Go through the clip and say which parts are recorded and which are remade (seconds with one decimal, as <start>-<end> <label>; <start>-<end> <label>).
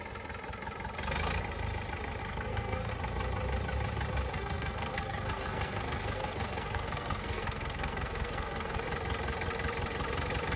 0.0-2.2 recorded; 2.2-2.9 remade; 2.9-4.3 recorded; 4.3-8.8 remade; 8.8-10.6 recorded